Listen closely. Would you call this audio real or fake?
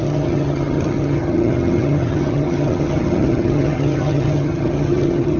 fake